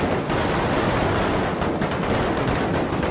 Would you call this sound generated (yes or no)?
no